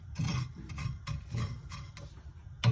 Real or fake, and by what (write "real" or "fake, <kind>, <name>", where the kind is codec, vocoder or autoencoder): real